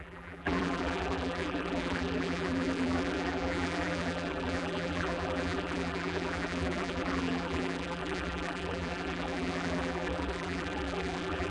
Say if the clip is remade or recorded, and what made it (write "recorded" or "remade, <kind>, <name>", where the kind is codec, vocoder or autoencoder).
remade, vocoder, BigVGAN v2